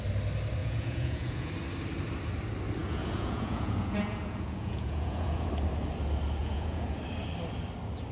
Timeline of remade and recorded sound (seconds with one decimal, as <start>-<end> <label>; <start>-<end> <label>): 0.0-0.6 recorded; 0.6-1.5 remade; 1.5-2.8 recorded; 2.8-5.5 remade; 5.5-6.4 recorded; 6.4-7.0 remade; 7.0-8.1 recorded